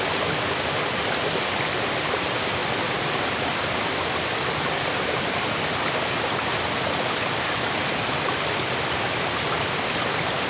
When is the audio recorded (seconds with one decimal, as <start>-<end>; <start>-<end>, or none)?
0.0-10.5